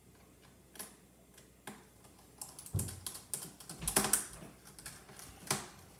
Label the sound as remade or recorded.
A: recorded